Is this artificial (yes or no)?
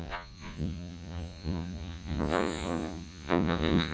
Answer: yes